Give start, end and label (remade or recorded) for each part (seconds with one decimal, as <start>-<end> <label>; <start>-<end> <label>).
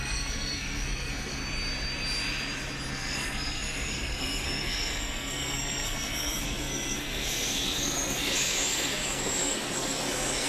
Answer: 0.0-1.4 remade; 1.4-2.9 recorded; 2.9-10.5 remade